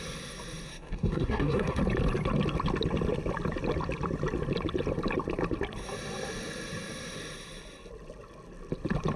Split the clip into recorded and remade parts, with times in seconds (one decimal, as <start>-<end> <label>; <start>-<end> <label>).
0.0-0.7 recorded; 0.7-1.8 remade; 1.8-9.2 recorded

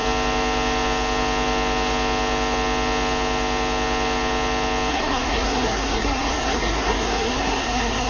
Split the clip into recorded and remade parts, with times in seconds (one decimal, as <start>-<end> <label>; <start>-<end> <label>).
0.0-4.9 recorded; 4.9-8.1 remade

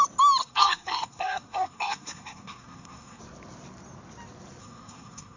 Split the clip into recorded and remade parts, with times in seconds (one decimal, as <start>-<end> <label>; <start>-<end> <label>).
0.0-0.4 recorded; 0.4-3.2 remade; 3.2-4.6 recorded; 4.6-5.4 remade